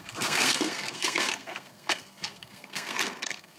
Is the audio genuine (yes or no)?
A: no